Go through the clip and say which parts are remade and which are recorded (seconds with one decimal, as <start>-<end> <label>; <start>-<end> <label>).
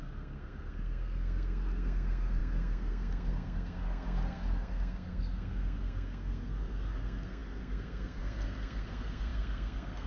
0.0-10.1 remade